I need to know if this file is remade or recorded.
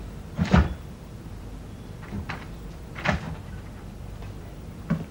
remade